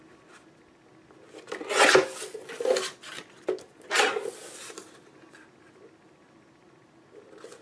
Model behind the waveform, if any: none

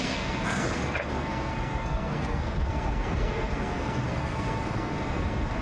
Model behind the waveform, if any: codec, SNAC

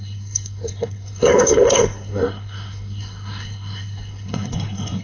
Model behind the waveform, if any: codec, SNAC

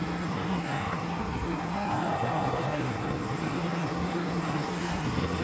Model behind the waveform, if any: codec, SNAC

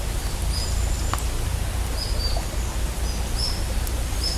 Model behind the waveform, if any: none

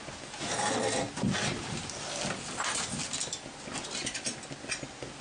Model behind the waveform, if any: none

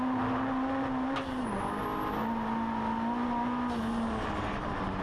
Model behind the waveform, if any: none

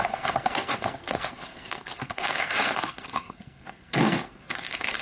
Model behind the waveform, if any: codec, SNAC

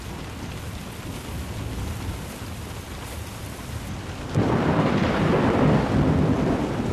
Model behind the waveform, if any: none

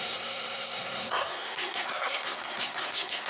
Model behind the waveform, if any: codec, SNAC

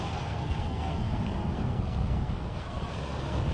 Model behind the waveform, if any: codec, SNAC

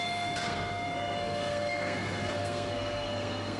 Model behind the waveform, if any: codec, SNAC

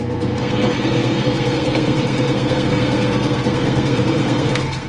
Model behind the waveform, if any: codec, SNAC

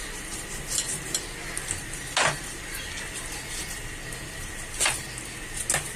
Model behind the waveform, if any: none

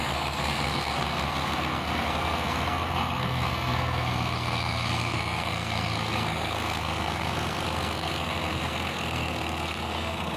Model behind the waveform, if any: codec, SNAC